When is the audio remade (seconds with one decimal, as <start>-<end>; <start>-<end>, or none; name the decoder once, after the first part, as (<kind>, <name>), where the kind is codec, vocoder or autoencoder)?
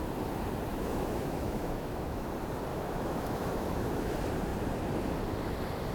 0.7-2.3 (autoencoder, DAC-VAE); 2.7-4.1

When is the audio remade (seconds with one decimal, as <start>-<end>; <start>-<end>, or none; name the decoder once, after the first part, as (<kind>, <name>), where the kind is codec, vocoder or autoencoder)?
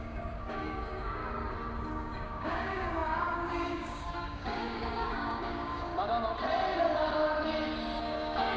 0.0-1.2 (codec, DAC); 1.9-5.9; 8.0-8.6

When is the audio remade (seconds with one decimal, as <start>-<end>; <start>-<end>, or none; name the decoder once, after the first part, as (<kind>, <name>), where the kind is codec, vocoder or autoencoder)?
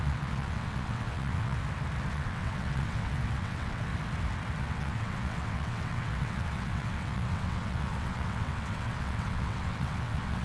0.0-1.6 (vocoder, WaveNeXt); 2.1-3.9; 4.6-10.4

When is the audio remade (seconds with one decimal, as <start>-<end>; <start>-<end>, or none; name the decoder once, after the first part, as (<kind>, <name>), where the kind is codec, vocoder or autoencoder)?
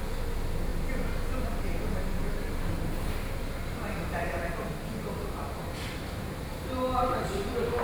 none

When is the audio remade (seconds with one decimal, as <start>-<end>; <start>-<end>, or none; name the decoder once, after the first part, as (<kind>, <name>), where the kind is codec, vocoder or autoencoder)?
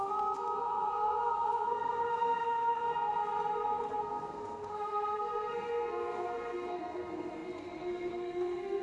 0.0-8.8 (codec, SNAC)